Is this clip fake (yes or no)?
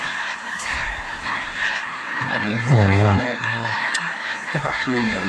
yes